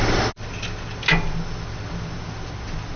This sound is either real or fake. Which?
real